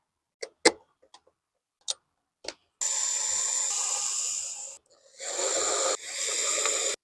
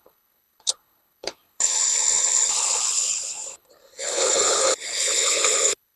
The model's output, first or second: second